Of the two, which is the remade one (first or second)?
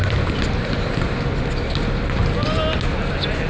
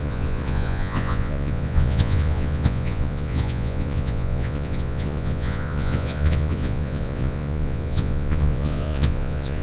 second